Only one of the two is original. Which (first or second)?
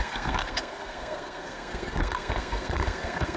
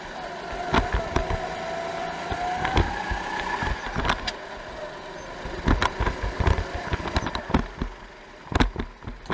second